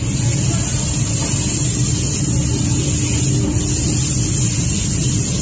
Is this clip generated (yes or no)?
no